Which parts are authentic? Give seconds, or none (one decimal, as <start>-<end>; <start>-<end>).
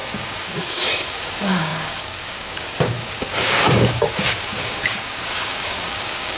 none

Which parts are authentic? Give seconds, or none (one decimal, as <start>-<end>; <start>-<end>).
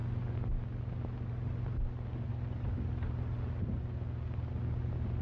0.0-5.2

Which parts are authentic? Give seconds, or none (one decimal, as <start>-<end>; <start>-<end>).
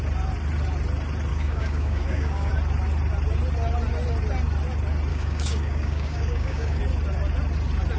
0.0-1.3; 2.5-5.1; 6.8-8.0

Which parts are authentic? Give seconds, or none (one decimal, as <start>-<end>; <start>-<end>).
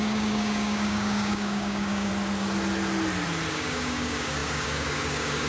2.1-3.5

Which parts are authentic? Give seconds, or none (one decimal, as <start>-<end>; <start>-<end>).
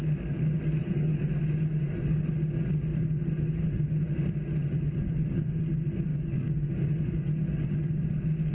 0.0-0.8; 1.4-5.0; 5.6-6.1; 6.7-8.5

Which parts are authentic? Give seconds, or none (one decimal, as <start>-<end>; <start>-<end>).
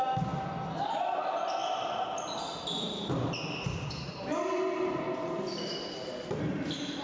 0.0-7.0